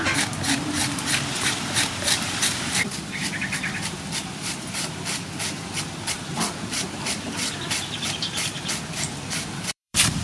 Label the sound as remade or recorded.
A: remade